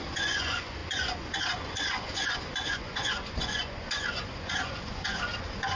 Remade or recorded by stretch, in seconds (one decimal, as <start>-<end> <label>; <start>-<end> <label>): 0.0-5.8 remade